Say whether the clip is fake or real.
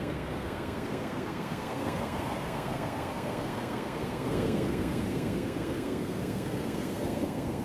fake